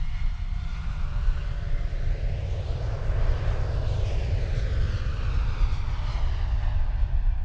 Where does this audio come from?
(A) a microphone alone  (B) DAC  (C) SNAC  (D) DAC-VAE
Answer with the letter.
A